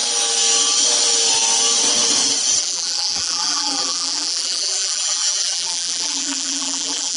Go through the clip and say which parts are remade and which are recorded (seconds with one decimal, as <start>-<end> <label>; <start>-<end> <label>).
0.0-2.6 recorded; 2.6-7.2 remade